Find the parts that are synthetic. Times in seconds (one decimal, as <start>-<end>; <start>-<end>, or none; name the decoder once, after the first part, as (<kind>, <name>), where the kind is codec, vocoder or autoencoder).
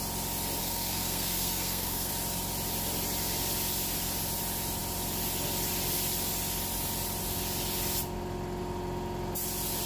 0.6-2.1 (codec, SNAC)